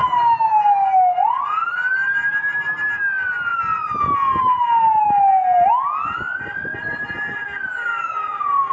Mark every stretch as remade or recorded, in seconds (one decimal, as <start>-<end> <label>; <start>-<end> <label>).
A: 0.0-8.7 recorded